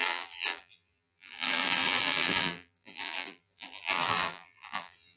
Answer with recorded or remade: remade